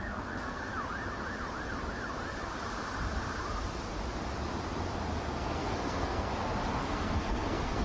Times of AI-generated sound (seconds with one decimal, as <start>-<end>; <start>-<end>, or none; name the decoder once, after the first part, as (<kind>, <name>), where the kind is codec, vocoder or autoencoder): 0.0-0.7 (codec, SNAC); 5.2-6.3; 6.8-7.8